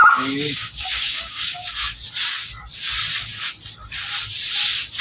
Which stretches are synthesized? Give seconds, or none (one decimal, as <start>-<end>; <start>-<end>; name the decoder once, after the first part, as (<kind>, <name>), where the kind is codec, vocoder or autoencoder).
0.0-2.0 (codec, DAC)